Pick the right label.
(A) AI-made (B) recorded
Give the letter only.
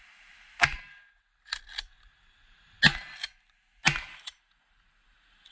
B